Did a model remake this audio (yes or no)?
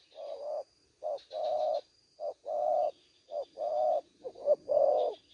yes